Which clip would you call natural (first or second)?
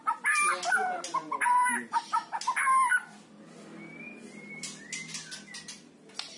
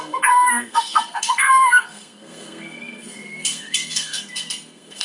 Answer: first